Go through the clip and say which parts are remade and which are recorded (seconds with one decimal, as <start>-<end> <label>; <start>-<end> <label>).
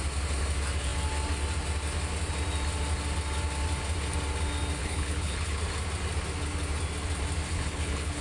0.0-4.8 recorded; 4.8-5.6 remade; 5.6-7.5 recorded; 7.5-8.2 remade